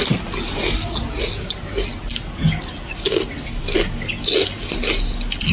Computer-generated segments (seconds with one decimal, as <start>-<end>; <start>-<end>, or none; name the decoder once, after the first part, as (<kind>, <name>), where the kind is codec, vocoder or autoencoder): none

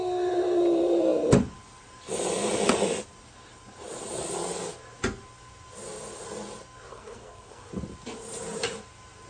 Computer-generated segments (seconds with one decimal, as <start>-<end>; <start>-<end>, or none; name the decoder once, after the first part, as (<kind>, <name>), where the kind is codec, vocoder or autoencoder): 6.9-7.7 (codec, SNAC)

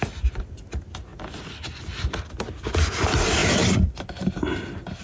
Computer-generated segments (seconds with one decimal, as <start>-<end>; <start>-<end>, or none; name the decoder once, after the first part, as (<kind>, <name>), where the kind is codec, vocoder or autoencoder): none